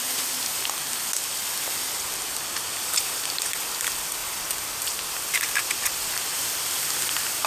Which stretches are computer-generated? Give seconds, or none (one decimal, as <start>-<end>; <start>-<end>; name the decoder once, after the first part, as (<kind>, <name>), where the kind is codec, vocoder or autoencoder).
none